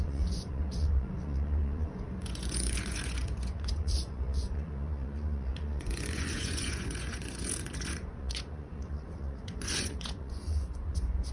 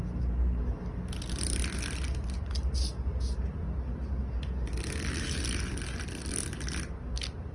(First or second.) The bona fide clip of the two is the second